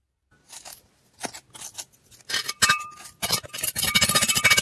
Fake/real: real